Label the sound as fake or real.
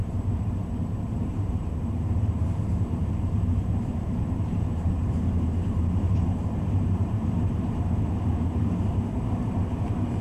fake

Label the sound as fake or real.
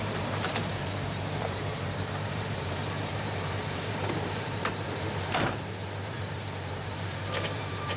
fake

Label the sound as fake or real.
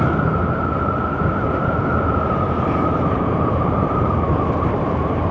fake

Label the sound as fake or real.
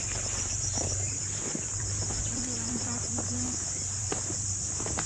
fake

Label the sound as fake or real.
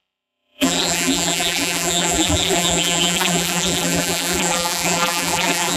fake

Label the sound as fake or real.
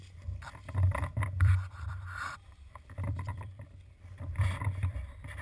fake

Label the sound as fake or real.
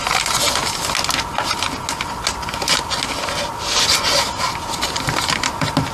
real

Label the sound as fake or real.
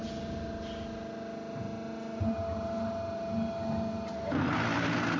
real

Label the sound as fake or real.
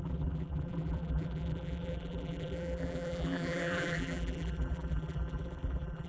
fake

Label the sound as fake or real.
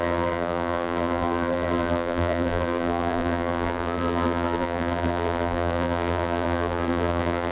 fake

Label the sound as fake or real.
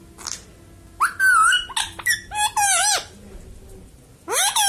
real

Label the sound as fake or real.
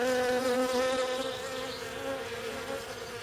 real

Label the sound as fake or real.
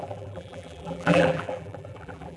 fake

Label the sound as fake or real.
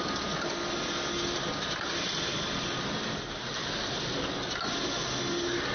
real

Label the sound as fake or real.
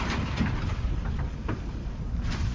fake